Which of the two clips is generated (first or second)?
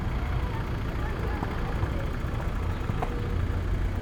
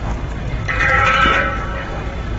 second